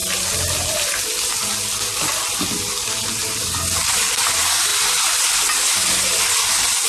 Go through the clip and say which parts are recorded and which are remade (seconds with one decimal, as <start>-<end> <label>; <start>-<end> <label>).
0.0-6.9 recorded